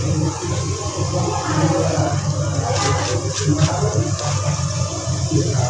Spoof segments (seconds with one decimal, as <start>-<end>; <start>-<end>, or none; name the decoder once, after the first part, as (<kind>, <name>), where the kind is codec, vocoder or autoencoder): 0.0-1.6 (vocoder, Vocos); 4.6-5.7